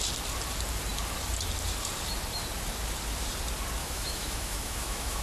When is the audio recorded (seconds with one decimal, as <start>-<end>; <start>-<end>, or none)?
0.0-3.8